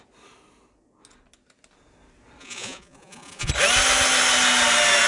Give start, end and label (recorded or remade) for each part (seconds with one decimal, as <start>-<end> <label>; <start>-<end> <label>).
0.0-2.4 recorded; 2.4-3.5 remade; 3.5-5.1 recorded